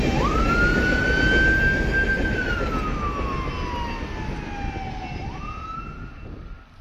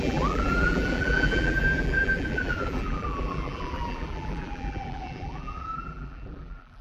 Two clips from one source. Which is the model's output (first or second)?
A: second